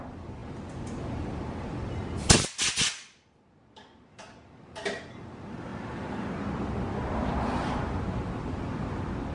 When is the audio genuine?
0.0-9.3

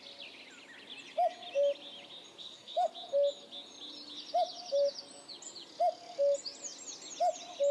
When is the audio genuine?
0.0-2.4; 2.9-7.7

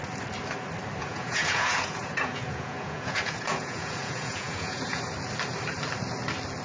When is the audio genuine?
0.0-1.0; 5.0-6.6

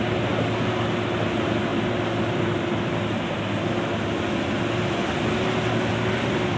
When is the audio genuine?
0.0-6.6

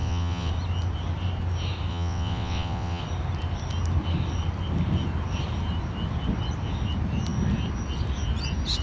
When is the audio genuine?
0.5-1.9; 3.0-8.8

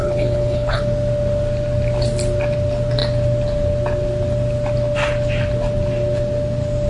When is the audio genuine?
0.8-6.9

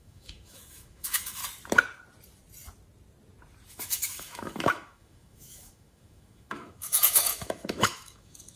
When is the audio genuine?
1.4-3.7